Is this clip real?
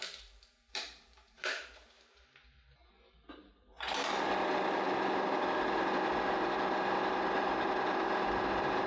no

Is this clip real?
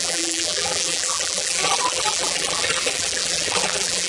no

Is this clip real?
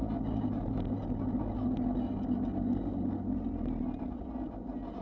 yes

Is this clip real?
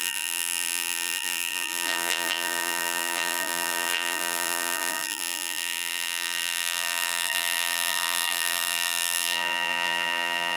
no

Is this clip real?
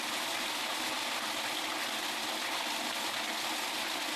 yes